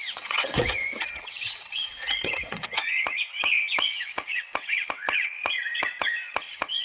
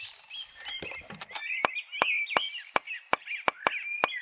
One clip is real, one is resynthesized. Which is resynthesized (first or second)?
first